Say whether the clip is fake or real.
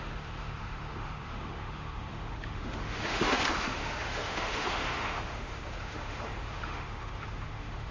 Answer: fake